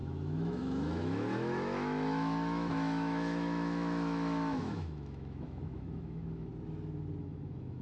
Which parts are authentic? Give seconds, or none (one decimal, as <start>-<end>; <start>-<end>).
6.5-7.2